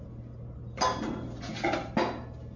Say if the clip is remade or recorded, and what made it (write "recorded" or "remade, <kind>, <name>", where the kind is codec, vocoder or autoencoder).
recorded